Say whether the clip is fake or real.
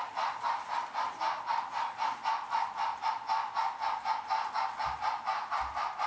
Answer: real